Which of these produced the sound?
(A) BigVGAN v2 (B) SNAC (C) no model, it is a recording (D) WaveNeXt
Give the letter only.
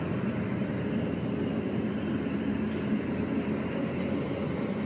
C